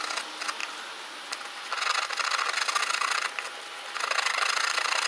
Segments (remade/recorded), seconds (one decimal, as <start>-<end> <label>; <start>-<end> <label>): 0.0-5.1 recorded